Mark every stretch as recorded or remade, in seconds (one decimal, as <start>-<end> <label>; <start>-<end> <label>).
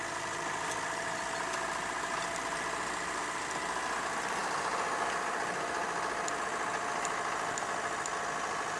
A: 0.0-8.8 recorded